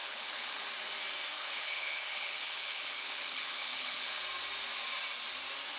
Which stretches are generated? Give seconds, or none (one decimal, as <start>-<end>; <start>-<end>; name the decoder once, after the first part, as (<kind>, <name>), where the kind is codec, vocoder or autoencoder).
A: 0.0-0.6 (codec, HILCodec); 1.4-4.2